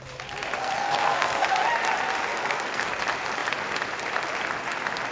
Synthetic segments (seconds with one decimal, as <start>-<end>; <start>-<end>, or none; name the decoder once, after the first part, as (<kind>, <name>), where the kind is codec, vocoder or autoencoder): 0.6-1.6 (codec, SNAC); 2.2-2.9